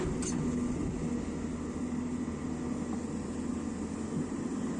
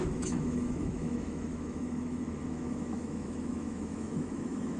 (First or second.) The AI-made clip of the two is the second